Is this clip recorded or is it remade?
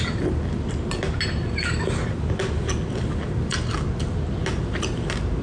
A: recorded